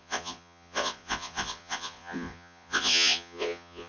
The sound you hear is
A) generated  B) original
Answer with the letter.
A